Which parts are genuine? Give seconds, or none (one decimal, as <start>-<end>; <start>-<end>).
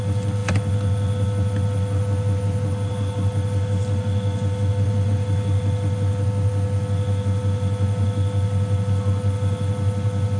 0.0-10.4